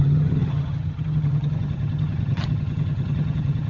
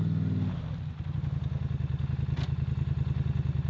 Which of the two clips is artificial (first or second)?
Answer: first